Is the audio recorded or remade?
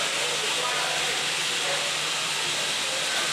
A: recorded